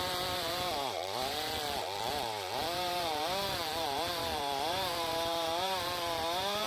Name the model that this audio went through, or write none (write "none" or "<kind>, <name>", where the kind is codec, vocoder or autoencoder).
vocoder, BigVGAN v2